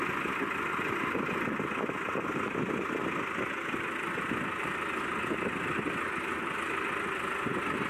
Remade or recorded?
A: recorded